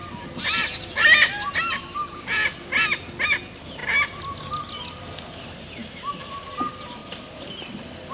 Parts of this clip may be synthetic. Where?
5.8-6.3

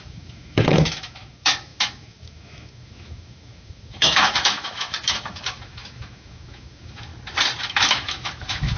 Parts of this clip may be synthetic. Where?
0.0-7.1; 7.6-8.8

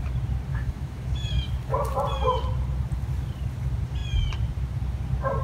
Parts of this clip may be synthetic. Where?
0.5-1.5

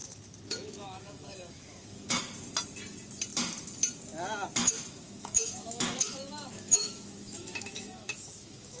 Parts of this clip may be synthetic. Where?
0.0-2.2; 4.6-8.8

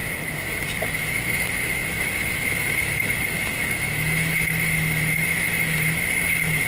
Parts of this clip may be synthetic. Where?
0.9-6.7

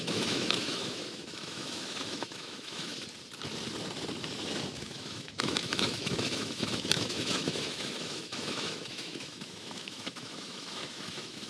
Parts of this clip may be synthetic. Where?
0.0-2.9; 4.7-11.5

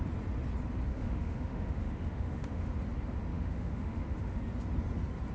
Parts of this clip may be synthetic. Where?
0.9-2.7; 3.3-4.5